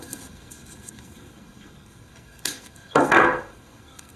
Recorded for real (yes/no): no